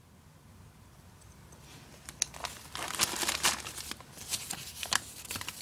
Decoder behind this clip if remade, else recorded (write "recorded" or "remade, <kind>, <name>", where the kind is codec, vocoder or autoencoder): recorded